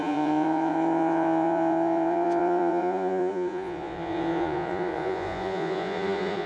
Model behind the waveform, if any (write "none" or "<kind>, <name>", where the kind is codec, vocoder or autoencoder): vocoder, Vocos